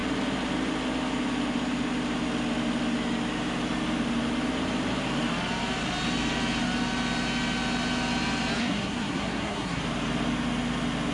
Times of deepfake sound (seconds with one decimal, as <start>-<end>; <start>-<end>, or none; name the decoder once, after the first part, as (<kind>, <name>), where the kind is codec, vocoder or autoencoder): 8.6-9.8 (codec, SNAC)